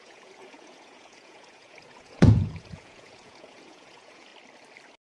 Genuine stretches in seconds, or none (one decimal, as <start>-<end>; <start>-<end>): 4.3-5.1